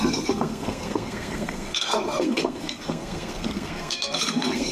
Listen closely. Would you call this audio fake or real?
fake